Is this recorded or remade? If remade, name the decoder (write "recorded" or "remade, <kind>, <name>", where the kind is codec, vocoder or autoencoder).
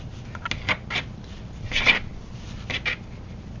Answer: recorded